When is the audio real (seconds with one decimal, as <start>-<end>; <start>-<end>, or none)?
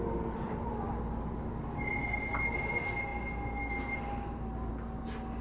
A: 0.0-5.4